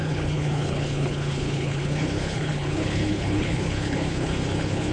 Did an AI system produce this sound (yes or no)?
yes